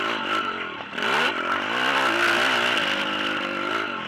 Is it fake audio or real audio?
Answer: real